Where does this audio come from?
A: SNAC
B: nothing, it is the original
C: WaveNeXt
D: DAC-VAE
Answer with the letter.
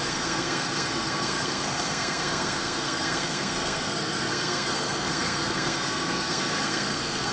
A